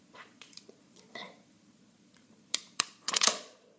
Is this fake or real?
fake